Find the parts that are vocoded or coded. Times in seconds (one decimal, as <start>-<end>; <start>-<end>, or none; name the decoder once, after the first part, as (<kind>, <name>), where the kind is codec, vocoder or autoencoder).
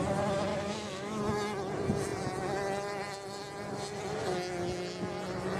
0.5-1.2 (autoencoder, DAC-VAE)